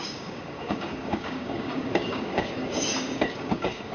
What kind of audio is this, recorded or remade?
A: remade